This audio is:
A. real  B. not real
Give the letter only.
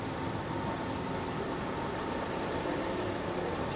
A